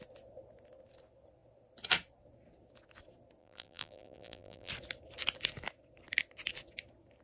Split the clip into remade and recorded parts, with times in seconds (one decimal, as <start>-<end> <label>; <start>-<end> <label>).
0.0-3.4 recorded; 3.4-4.7 remade; 4.7-7.2 recorded